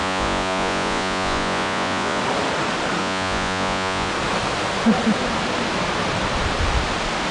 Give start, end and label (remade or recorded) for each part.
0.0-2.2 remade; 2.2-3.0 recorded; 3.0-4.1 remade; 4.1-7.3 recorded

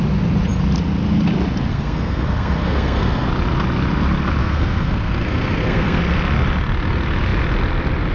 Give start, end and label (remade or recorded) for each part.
0.0-1.7 recorded; 1.7-3.3 remade; 3.3-4.4 recorded; 4.4-6.0 remade; 6.0-8.1 recorded

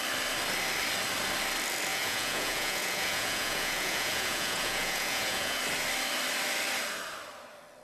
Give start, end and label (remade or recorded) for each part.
0.0-1.9 recorded; 1.9-5.6 remade; 5.6-7.8 recorded

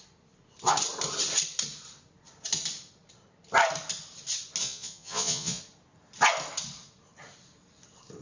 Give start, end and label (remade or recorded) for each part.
0.0-4.6 recorded; 4.6-5.6 remade; 5.6-8.2 recorded

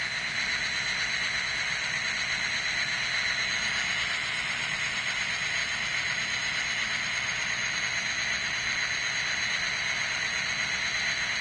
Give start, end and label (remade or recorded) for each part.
0.0-11.4 recorded

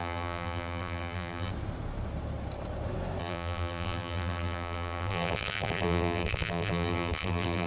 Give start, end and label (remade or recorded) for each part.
0.0-1.5 remade; 1.5-3.2 recorded; 3.2-7.7 remade

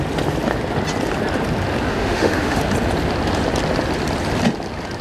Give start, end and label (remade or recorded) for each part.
0.0-1.9 recorded; 1.9-2.6 remade; 2.6-5.0 recorded